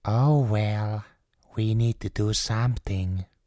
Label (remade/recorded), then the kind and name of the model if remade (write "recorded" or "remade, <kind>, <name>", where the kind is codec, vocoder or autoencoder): recorded